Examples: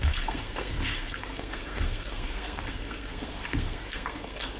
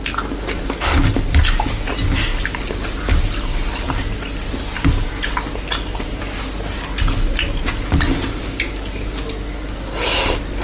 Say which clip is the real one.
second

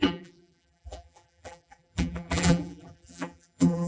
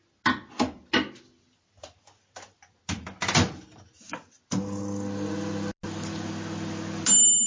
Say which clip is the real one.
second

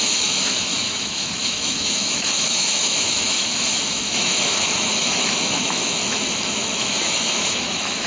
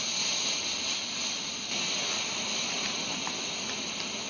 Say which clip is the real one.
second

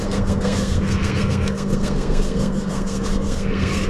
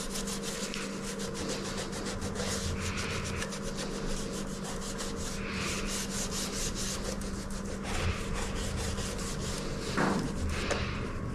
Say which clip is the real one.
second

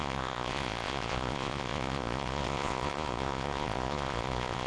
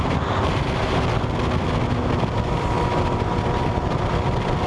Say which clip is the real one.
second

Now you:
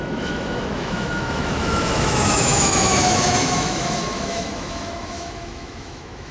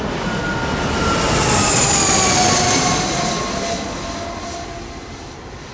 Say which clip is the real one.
second